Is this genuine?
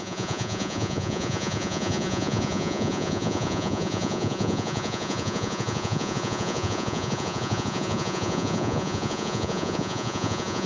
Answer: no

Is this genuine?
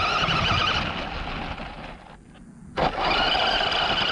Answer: yes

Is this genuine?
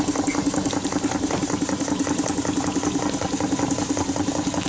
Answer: yes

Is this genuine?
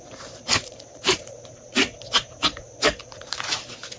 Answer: no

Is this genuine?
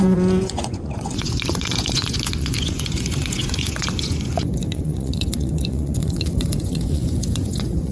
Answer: no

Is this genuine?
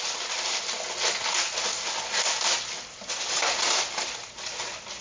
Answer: yes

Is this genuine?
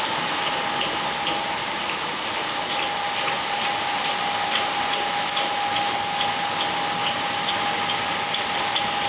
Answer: yes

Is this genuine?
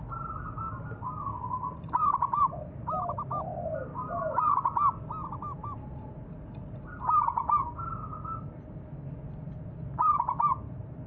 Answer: yes